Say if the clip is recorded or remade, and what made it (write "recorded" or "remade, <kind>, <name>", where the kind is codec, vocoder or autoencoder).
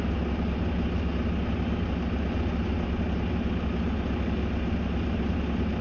recorded